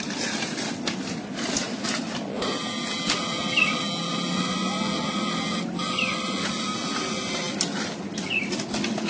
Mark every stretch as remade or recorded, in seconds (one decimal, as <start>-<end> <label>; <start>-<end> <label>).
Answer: 0.0-9.1 recorded